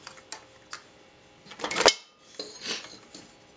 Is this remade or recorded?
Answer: recorded